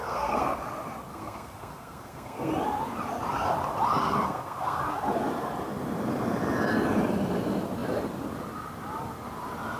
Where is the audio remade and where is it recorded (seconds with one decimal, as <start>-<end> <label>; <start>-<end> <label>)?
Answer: 0.0-0.6 remade; 0.6-1.1 recorded; 1.1-2.5 remade; 2.5-4.0 recorded; 4.0-4.8 remade; 4.8-9.8 recorded